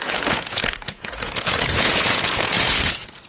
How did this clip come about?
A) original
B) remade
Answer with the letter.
B